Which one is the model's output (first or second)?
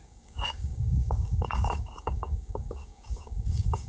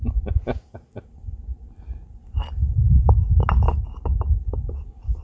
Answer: first